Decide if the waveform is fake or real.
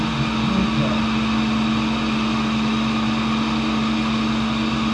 real